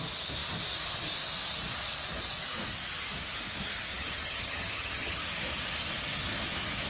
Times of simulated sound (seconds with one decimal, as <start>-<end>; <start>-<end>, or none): 3.9-5.2